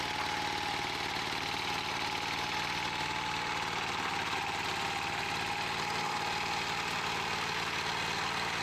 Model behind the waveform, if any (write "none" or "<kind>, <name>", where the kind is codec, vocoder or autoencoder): none